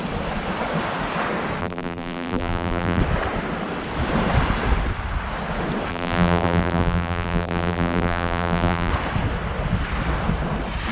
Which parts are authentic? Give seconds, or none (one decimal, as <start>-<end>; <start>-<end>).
0.0-1.6; 3.0-5.9; 8.9-10.9